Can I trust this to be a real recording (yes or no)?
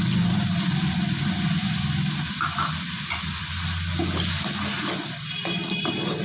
yes